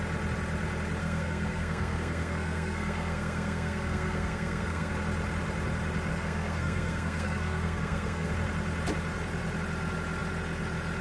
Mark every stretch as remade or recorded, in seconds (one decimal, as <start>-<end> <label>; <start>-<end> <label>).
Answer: 0.0-1.0 recorded; 1.0-4.9 remade; 4.9-6.1 recorded; 6.1-8.3 remade; 8.3-11.0 recorded